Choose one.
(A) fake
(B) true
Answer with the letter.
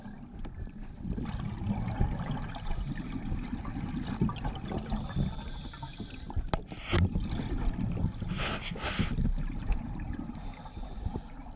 B